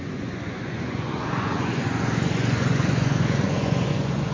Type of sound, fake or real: fake